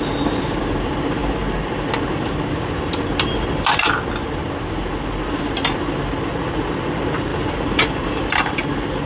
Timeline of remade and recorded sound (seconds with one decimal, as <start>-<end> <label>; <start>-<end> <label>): 0.0-7.3 recorded; 7.3-8.4 remade; 8.4-9.1 recorded